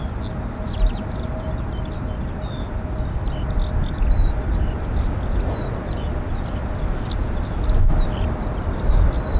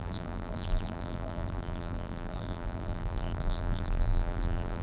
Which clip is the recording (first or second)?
first